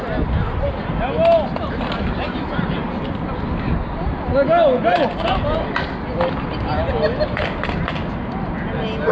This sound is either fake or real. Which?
real